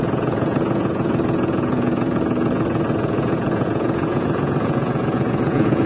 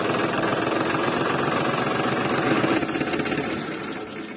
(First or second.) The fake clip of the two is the first